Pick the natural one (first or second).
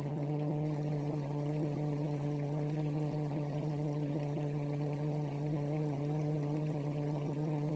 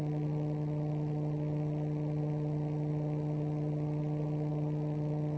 second